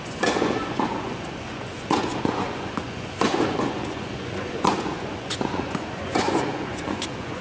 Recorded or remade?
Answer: remade